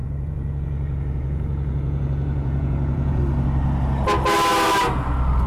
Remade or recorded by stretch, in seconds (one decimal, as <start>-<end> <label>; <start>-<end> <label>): 0.0-3.2 remade; 3.2-5.5 recorded